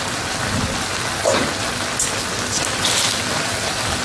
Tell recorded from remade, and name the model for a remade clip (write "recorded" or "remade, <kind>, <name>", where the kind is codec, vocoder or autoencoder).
recorded